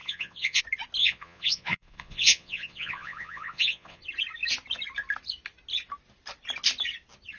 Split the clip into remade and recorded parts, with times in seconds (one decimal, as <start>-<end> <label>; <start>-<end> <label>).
0.0-0.6 remade; 0.6-1.0 recorded; 1.0-4.0 remade; 4.0-7.4 recorded